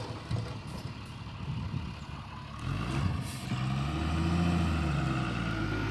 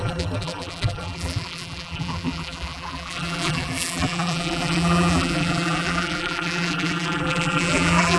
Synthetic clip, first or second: second